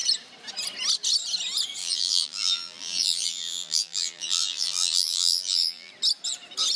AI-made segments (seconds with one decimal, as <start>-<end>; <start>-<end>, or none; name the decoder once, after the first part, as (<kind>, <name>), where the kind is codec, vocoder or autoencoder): 1.8-5.9 (vocoder, BigVGAN v2)